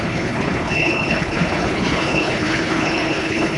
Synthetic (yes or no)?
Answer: yes